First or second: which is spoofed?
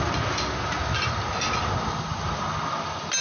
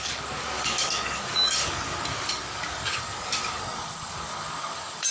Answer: second